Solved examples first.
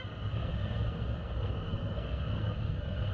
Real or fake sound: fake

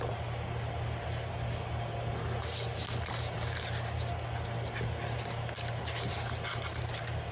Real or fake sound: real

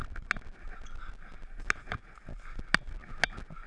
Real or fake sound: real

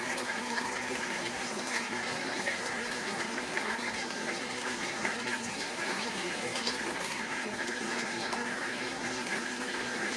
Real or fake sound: fake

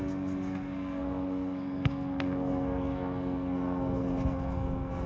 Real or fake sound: fake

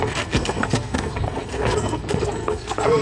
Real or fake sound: fake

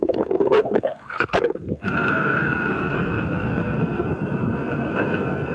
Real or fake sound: fake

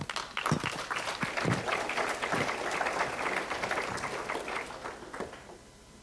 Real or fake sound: real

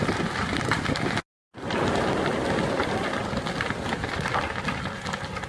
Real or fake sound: real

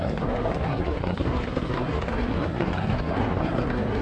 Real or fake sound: fake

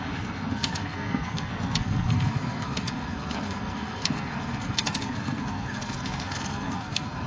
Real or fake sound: fake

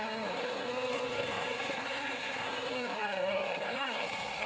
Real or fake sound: fake